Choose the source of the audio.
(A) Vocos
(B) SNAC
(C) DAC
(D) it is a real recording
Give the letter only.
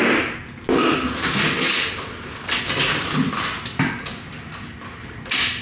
D